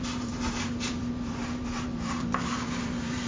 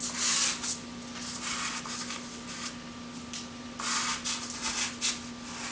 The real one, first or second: second